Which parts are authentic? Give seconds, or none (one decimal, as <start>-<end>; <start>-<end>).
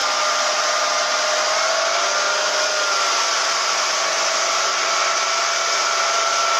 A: 0.0-4.7